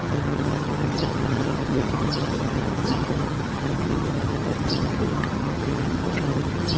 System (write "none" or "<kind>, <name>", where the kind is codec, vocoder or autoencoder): vocoder, HiFi-GAN